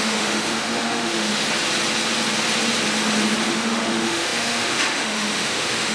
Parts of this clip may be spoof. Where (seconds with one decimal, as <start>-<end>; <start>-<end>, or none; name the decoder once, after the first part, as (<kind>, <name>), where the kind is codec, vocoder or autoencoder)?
0.0-1.3 (autoencoder, DAC-VAE); 3.5-5.9

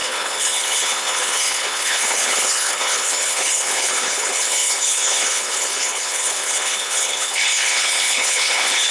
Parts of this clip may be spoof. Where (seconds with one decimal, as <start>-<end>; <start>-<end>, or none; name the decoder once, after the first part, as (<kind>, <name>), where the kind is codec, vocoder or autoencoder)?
0.0-8.9 (codec, HILCodec)

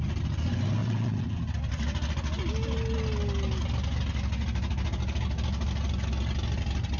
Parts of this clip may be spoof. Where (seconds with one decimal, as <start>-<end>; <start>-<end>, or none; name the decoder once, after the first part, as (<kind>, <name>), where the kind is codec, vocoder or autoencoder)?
0.8-1.4 (vocoder, WaveNeXt)

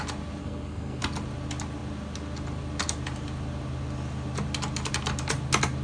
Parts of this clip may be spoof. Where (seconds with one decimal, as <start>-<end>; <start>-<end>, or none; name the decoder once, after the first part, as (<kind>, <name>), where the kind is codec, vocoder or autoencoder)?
0.4-1.0 (codec, SNAC)

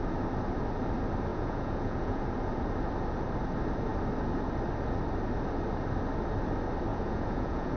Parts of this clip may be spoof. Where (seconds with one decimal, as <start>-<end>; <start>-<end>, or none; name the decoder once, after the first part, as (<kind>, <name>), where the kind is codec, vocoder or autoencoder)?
1.3-2.2 (vocoder, Vocos); 6.9-7.8